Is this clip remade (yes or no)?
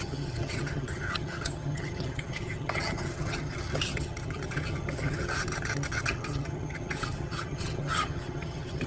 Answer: yes